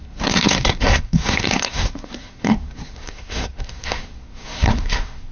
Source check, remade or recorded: remade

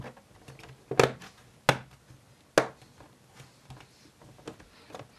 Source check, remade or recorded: recorded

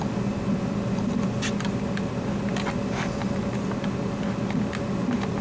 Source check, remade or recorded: recorded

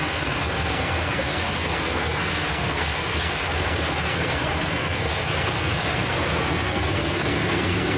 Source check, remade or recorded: remade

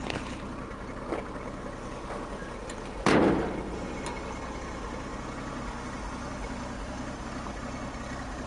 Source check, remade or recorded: recorded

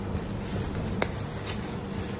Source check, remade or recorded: recorded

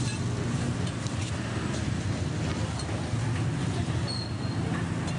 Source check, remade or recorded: recorded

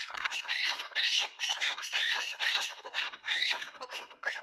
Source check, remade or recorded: remade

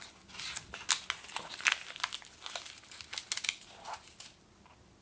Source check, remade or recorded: recorded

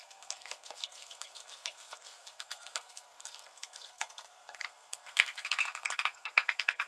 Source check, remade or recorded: remade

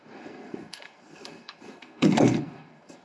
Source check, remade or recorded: remade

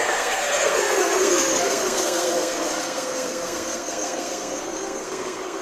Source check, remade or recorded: remade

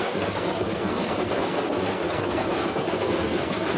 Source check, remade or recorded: remade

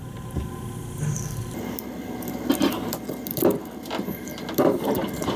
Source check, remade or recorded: recorded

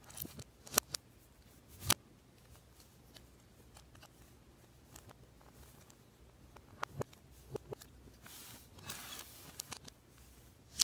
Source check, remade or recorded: recorded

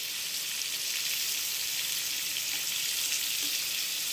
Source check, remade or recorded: recorded